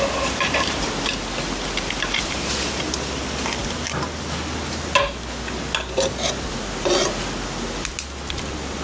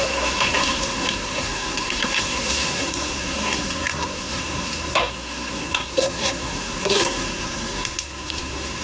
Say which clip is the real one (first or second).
first